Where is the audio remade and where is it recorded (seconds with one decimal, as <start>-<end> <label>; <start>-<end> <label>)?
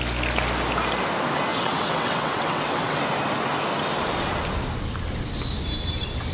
0.0-1.5 recorded; 1.5-3.0 remade; 3.0-6.3 recorded